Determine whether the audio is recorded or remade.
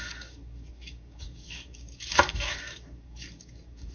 remade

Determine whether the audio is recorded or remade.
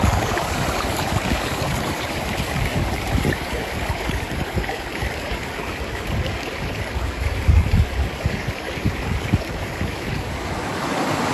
remade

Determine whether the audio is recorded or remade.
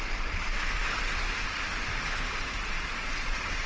recorded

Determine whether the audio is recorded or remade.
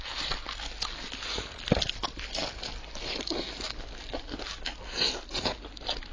recorded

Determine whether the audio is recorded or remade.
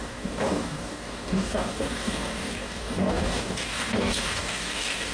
remade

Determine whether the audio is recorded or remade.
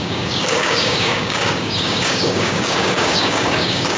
remade